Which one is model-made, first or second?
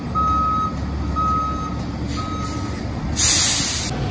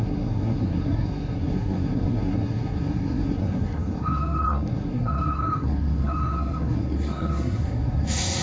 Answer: second